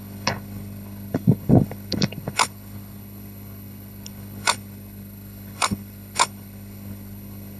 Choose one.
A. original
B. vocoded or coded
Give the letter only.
B